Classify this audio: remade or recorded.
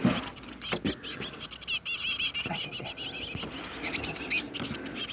recorded